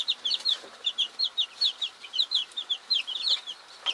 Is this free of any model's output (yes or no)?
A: no